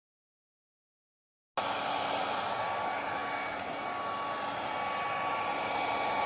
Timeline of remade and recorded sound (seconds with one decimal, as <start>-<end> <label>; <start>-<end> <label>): 0.0-6.3 recorded